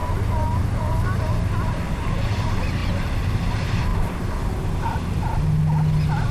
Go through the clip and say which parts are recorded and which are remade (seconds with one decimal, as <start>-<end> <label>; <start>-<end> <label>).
0.0-1.7 recorded; 1.7-3.9 remade; 3.9-6.3 recorded

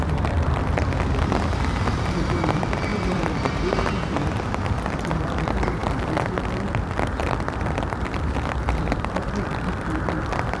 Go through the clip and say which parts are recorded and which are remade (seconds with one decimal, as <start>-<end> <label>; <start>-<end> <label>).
0.0-5.8 remade; 5.8-7.2 recorded; 7.2-10.6 remade

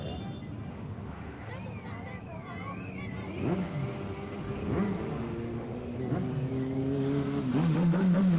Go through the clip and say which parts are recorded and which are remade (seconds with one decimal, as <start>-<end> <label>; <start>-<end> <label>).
0.0-0.7 recorded; 0.7-1.5 remade; 1.5-5.1 recorded; 5.1-6.0 remade; 6.0-7.5 recorded; 7.5-8.4 remade

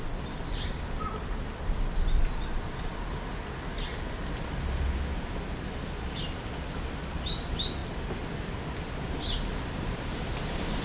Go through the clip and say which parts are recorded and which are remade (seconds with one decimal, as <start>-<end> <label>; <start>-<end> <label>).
0.0-10.8 recorded

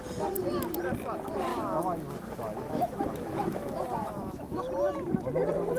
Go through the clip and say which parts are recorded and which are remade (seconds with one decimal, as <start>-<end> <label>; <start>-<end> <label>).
0.0-1.5 recorded; 1.5-4.6 remade; 4.6-5.8 recorded

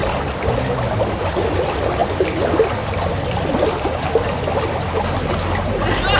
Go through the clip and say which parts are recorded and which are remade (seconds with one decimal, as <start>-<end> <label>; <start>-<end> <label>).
0.0-6.2 recorded

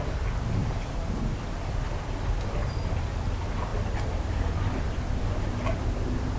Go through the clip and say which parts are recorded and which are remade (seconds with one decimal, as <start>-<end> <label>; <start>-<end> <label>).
0.0-6.4 recorded

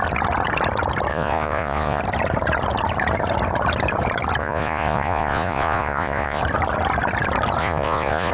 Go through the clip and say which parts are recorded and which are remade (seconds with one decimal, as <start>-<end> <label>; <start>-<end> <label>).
0.0-1.1 recorded; 1.1-2.0 remade; 2.0-4.4 recorded; 4.4-6.4 remade; 6.4-7.6 recorded; 7.6-8.3 remade